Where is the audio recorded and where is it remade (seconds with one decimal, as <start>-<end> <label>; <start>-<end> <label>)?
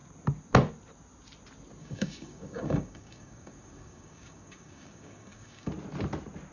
0.0-1.8 recorded; 1.8-5.7 remade; 5.7-6.5 recorded